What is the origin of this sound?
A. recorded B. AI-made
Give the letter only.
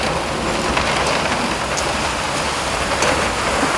A